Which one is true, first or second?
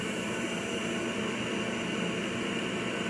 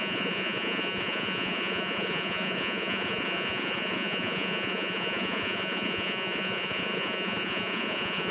first